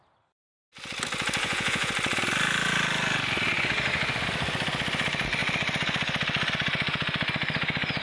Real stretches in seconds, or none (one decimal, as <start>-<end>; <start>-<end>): 0.0-1.4; 1.9-8.0